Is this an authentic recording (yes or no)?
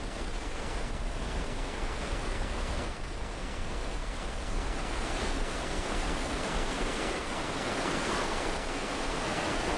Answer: no